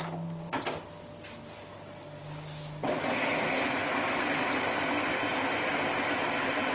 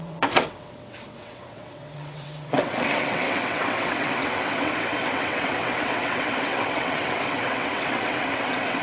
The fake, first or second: second